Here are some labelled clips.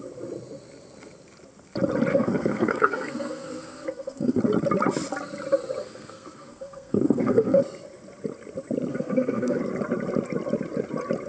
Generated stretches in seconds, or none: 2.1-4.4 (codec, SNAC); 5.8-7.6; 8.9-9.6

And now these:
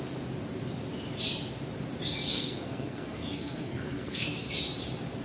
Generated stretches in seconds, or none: 2.3-4.5 (codec, SNAC)

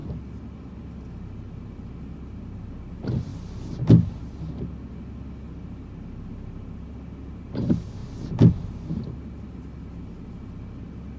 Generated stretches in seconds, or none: none